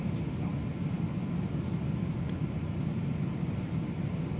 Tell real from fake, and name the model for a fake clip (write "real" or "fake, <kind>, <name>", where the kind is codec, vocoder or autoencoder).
real